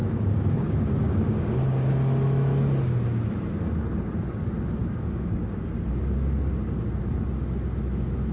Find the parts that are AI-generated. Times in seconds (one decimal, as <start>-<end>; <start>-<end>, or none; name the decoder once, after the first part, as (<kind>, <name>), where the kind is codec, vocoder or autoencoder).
0.0-1.9 (codec, DAC); 4.8-5.7